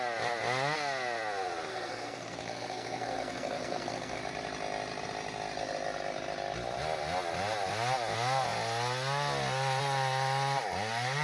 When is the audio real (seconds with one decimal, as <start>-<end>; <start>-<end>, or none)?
0.0-1.7; 4.2-11.2